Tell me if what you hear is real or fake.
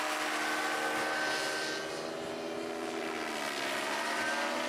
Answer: real